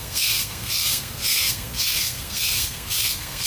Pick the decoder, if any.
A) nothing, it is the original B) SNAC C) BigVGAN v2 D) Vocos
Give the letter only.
B